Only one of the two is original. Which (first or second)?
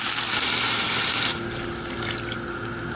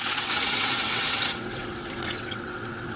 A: first